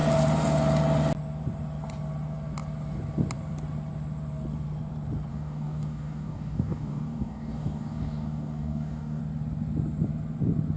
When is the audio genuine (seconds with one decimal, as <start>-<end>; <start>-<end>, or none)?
0.0-5.3; 9.2-10.8